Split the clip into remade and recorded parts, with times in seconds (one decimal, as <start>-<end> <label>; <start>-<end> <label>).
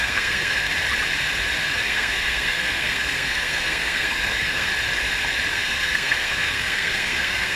0.0-0.7 remade; 0.7-1.6 recorded; 1.6-4.7 remade; 4.7-5.5 recorded; 5.5-7.6 remade